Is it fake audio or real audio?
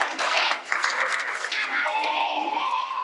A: fake